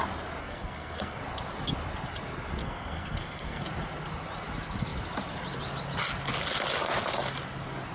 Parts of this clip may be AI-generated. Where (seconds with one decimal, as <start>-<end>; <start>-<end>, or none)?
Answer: 0.4-1.2; 2.6-3.6